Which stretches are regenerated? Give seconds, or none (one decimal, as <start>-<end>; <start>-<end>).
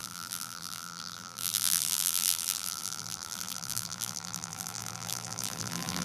0.0-6.0